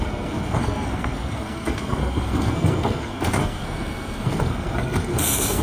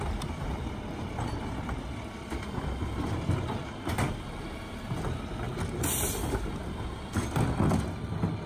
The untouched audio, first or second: second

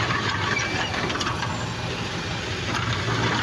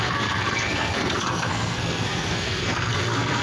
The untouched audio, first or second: first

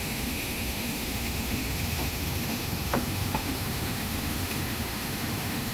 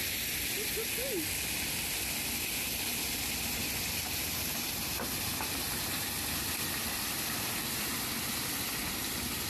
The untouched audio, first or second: second